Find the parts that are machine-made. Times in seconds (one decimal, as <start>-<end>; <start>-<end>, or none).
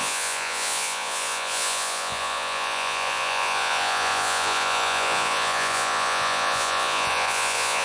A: 0.0-7.8